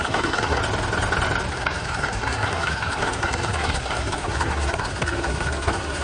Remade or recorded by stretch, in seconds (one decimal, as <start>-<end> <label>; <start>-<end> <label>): 0.0-0.6 remade; 0.6-1.5 recorded; 1.5-6.0 remade